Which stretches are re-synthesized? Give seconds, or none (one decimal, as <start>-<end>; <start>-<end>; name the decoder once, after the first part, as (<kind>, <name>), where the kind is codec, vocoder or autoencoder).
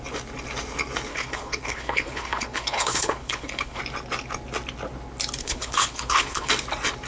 1.1-3.8 (codec, HILCodec); 5.4-6.5